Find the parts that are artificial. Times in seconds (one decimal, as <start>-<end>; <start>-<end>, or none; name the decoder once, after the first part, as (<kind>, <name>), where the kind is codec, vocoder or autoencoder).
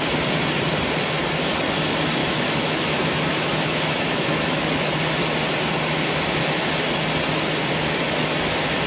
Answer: 2.2-4.9 (autoencoder, DAC-VAE)